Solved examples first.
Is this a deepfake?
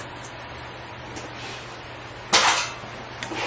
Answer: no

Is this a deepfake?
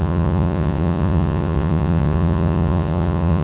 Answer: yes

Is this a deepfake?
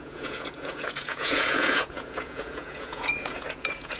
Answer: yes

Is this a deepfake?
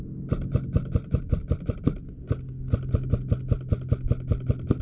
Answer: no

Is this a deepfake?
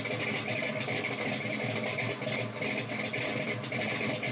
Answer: no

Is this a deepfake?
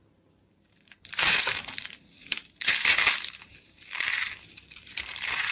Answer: yes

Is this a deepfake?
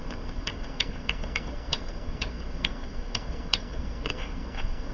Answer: yes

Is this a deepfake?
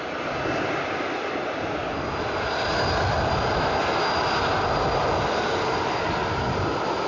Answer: no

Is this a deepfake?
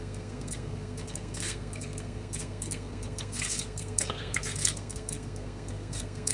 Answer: yes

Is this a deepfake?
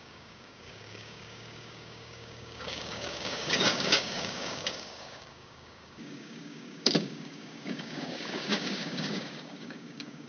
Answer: yes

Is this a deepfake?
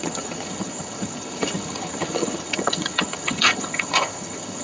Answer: yes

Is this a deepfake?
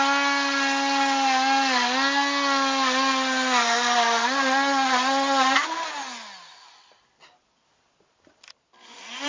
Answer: no